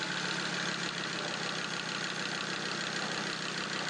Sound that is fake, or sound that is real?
real